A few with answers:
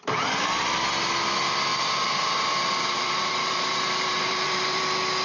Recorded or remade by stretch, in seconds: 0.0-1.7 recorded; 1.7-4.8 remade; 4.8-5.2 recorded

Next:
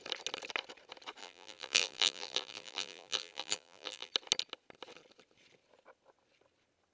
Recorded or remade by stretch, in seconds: 0.0-1.2 recorded; 1.2-4.1 remade; 4.1-6.9 recorded

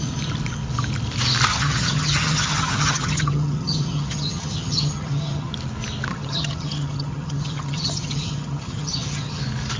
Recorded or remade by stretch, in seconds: 0.0-1.5 recorded; 1.5-5.5 remade; 5.5-6.1 recorded; 6.1-9.4 remade; 9.4-9.8 recorded

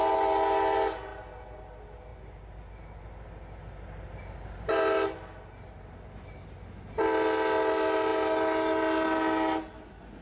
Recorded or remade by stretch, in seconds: 0.0-10.2 recorded

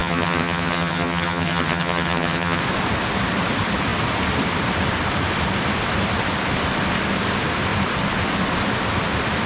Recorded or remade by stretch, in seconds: 0.0-2.6 remade; 2.6-9.5 recorded